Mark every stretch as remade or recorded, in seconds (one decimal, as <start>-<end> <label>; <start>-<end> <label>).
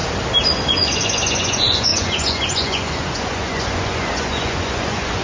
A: 0.0-0.7 recorded; 0.7-5.2 remade